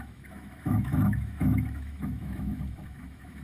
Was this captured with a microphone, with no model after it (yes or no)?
no